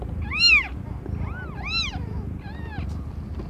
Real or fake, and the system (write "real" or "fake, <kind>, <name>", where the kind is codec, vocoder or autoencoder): real